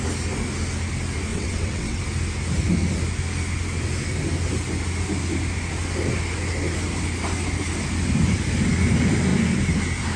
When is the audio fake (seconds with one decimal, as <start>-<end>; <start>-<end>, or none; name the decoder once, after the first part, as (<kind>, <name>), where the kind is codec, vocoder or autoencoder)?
1.3-2.0 (vocoder, WaveNeXt)